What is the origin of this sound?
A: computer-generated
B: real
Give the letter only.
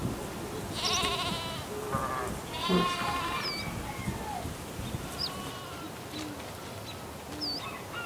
B